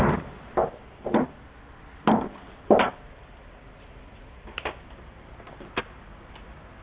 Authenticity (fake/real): real